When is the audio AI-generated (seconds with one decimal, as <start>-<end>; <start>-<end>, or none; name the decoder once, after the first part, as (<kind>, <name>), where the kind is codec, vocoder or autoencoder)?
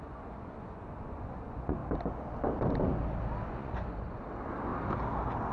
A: 0.0-1.8 (vocoder, Vocos); 3.5-4.7